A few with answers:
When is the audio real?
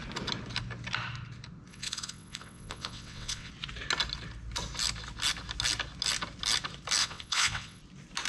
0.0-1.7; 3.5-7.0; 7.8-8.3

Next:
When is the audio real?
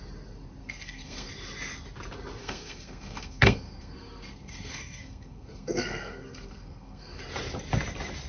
0.0-0.6; 1.3-2.4; 7.2-8.3